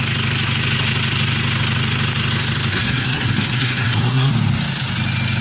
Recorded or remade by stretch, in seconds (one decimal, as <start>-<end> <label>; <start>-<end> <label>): 0.0-2.7 recorded; 2.7-4.3 remade; 4.3-5.4 recorded